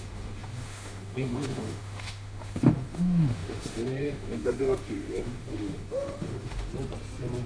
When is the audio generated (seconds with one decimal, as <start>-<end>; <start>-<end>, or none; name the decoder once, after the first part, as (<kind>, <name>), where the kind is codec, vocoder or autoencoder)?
0.0-6.7 (autoencoder, DAC-VAE)